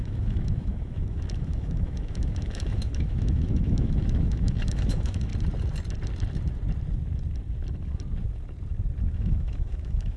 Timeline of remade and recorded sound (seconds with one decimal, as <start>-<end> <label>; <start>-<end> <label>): 0.0-5.3 remade; 5.3-9.0 recorded; 9.0-10.2 remade